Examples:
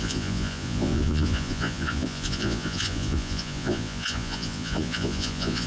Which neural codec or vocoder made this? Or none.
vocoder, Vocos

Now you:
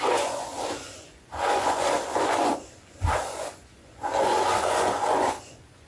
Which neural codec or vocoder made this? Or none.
vocoder, Vocos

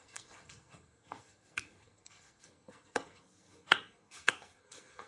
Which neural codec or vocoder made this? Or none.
codec, SNAC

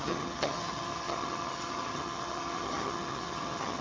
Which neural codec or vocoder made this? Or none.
vocoder, HiFi-GAN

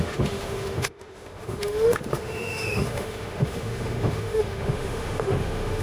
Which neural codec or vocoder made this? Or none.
autoencoder, DAC-VAE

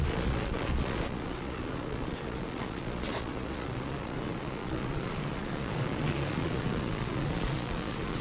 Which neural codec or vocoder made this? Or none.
vocoder, Vocos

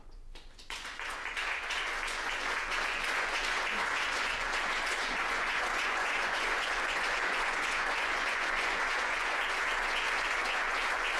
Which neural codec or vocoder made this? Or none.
vocoder, Vocos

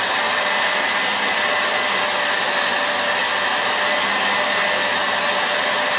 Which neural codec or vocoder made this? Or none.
none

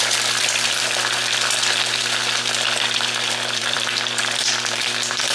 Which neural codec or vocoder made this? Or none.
vocoder, BigVGAN v2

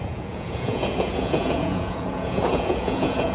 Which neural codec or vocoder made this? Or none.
vocoder, Vocos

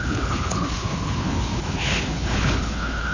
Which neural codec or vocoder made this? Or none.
codec, HILCodec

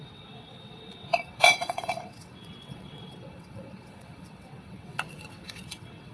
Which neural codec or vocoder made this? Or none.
vocoder, WaveNeXt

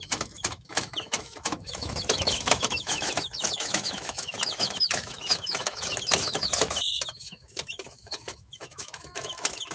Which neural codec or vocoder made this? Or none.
autoencoder, DAC-VAE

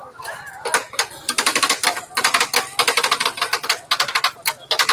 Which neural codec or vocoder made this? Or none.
none